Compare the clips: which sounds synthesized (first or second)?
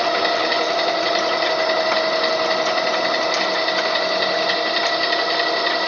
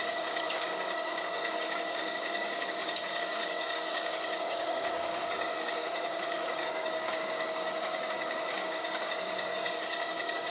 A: second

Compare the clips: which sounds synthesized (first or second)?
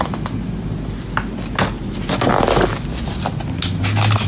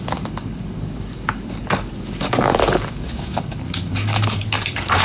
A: second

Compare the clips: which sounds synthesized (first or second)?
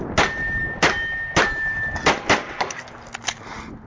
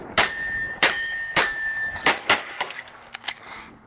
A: second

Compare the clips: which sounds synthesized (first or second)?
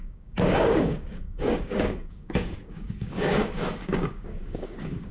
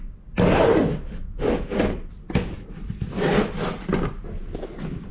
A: first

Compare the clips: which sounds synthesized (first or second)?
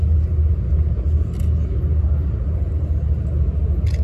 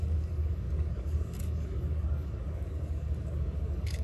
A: second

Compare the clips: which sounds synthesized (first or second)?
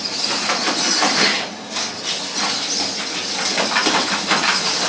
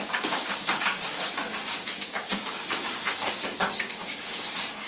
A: second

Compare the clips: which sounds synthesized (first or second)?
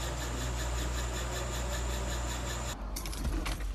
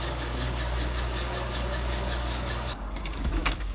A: second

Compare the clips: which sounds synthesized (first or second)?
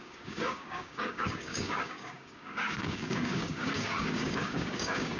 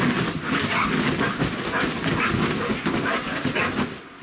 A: first